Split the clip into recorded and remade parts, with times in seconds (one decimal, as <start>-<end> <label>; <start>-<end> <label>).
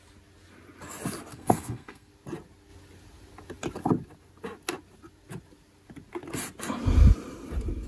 0.0-1.3 recorded; 1.3-2.1 remade; 2.1-7.9 recorded